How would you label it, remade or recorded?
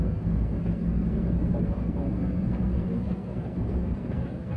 remade